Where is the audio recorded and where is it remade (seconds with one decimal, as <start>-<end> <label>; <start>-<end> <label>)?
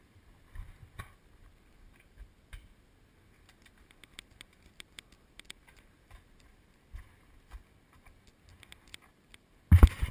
0.0-10.1 recorded